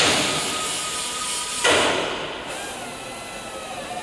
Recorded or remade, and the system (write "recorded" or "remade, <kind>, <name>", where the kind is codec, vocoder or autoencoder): recorded